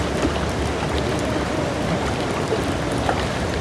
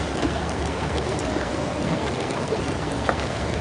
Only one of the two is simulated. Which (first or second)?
second